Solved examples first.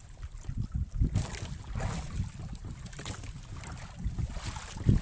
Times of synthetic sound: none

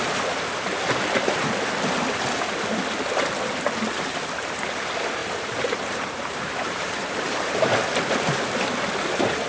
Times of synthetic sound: 5.2-7.7 (vocoder, BigVGAN v2)

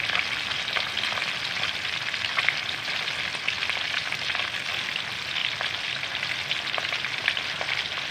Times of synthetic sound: 5.4-6.2 (vocoder, BigVGAN v2)

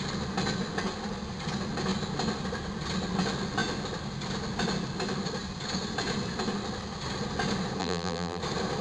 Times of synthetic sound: 7.8-8.4 (vocoder, BigVGAN v2)

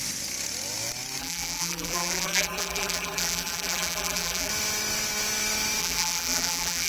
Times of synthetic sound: 1.2-4.5 (vocoder, BigVGAN v2); 5.8-6.9

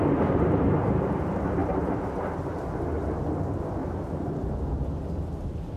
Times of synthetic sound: 1.6-2.6 (vocoder, BigVGAN v2); 3.8-4.4

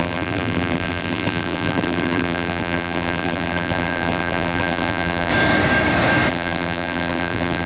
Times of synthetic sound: 0.0-5.3 (vocoder, BigVGAN v2); 6.3-7.7

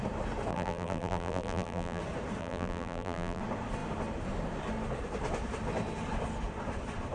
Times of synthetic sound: 0.5-2.0 (vocoder, BigVGAN v2); 2.4-3.4